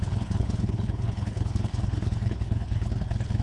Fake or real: fake